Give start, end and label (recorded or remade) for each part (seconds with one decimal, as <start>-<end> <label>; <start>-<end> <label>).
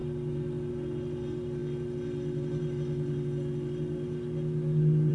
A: 0.0-5.1 recorded